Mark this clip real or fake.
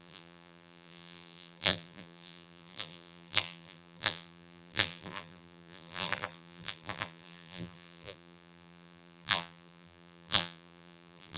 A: fake